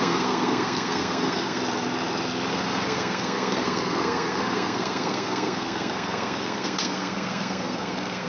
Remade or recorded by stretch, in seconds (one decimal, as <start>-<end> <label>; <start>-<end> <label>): 0.0-1.6 remade; 1.6-2.5 recorded; 2.5-8.3 remade